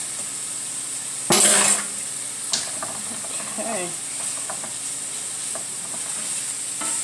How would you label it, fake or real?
real